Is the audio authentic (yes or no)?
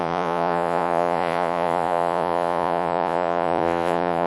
no